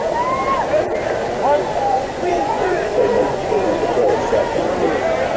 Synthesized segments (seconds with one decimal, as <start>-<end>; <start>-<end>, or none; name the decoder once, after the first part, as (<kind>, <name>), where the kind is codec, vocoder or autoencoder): 1.9-4.7 (vocoder, Vocos)